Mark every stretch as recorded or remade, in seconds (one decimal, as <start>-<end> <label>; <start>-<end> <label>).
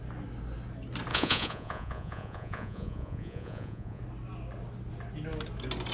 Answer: 0.0-1.1 recorded; 1.1-4.0 remade; 4.0-5.9 recorded